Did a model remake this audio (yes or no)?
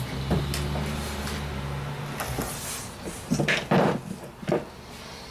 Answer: no